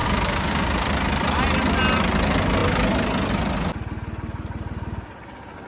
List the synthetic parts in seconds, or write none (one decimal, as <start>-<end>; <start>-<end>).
0.0-0.7